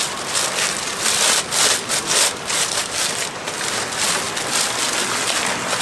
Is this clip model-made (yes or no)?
yes